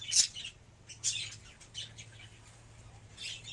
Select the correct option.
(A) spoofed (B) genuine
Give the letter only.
B